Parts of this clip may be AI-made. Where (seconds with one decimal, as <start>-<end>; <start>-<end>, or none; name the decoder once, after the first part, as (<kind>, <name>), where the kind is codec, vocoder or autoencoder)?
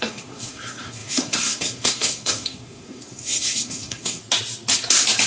0.0-4.2 (codec, SNAC)